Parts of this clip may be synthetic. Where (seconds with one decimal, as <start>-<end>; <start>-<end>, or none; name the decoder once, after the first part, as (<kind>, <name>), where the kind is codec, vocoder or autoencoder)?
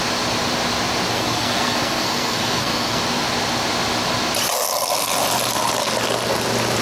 1.1-3.0 (codec, SNAC)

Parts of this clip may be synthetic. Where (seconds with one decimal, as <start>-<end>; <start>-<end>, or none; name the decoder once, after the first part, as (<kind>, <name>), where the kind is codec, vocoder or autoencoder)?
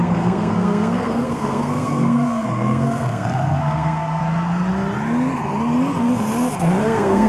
0.0-4.2 (codec, SNAC); 6.8-7.3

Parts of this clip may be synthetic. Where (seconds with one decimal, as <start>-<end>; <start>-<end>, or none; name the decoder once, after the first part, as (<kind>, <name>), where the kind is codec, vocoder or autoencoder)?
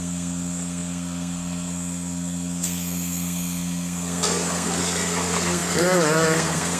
0.0-6.8 (codec, SNAC)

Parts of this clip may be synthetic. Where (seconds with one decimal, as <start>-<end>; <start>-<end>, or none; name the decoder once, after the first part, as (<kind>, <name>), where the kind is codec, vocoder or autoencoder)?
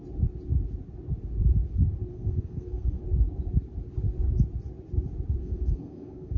2.1-3.0 (codec, SNAC); 5.4-6.4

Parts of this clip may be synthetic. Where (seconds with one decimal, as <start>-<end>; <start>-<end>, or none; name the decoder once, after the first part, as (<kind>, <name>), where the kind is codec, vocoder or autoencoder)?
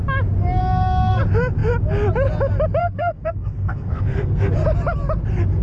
0.6-1.2 (codec, SNAC); 2.8-4.5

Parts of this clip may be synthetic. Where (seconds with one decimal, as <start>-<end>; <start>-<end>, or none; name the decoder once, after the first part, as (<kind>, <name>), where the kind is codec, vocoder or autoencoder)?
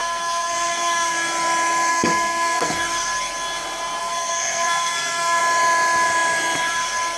0.0-1.1 (codec, SNAC); 1.9-2.7; 4.0-5.4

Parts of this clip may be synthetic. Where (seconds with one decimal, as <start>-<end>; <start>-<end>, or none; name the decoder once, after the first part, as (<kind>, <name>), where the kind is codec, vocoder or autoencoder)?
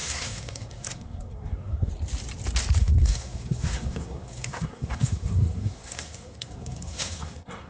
0.0-1.9 (codec, SNAC); 2.8-7.7